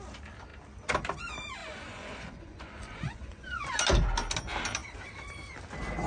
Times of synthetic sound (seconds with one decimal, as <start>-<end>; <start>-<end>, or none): 1.6-3.7